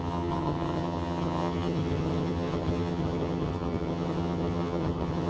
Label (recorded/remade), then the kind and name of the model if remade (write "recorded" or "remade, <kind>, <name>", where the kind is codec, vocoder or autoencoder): remade, vocoder, HiFi-GAN